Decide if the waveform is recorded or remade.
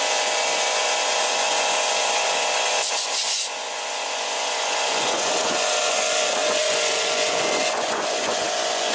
remade